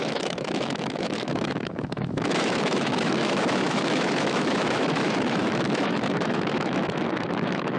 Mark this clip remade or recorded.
remade